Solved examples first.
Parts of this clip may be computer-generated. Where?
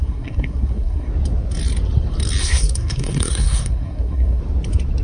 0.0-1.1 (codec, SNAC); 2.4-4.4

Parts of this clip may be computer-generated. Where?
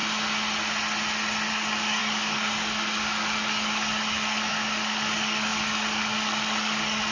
1.5-7.1 (codec, DAC)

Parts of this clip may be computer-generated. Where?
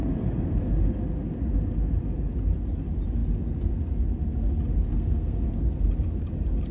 4.9-5.7 (codec, SNAC)